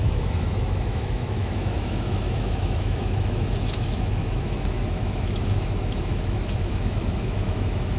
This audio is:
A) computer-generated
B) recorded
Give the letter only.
A